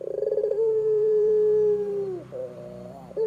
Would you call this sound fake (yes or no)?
yes